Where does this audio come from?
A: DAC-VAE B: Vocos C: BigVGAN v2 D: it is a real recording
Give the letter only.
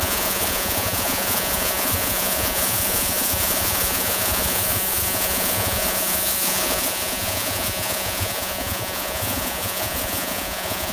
B